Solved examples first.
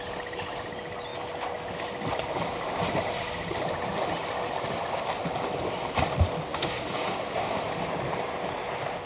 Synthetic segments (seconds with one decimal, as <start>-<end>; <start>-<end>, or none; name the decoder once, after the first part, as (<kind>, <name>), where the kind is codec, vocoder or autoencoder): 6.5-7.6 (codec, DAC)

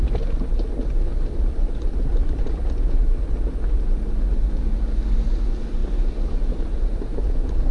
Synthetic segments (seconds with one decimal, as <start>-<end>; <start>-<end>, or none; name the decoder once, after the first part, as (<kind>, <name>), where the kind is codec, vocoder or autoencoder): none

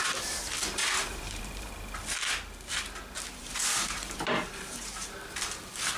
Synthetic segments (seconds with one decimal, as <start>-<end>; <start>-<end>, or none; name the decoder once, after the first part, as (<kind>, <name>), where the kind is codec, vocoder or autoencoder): 0.8-1.7 (vocoder, BigVGAN v2); 3.4-5.6

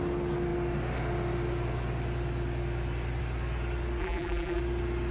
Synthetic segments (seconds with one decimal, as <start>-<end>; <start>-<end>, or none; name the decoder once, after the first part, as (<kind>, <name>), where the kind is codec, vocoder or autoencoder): 4.0-4.6 (vocoder, BigVGAN v2)

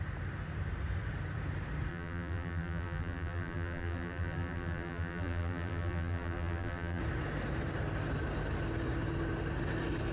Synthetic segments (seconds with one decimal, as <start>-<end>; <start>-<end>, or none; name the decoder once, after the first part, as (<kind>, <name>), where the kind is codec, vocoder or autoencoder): 1.9-7.0 (vocoder, BigVGAN v2)

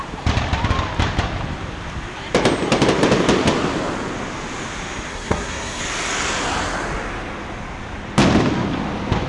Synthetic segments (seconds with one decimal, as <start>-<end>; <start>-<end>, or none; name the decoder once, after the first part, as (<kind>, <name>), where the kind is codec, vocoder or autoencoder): 5.1-5.8 (codec, SNAC)